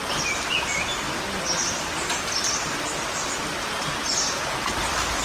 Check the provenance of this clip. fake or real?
real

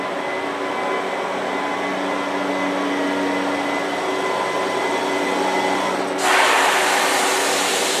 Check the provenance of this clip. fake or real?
real